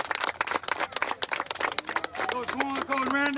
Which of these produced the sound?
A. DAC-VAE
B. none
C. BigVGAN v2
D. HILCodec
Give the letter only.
B